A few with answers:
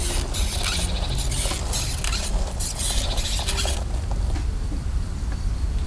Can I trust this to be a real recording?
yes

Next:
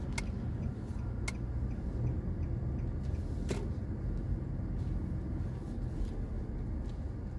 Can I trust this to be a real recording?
yes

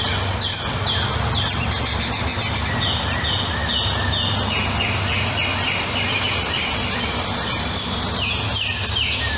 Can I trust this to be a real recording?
yes